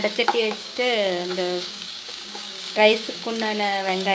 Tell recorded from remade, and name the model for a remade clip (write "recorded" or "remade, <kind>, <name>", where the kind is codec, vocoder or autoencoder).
remade, codec, DAC